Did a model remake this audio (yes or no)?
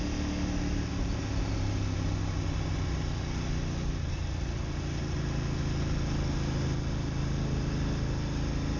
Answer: no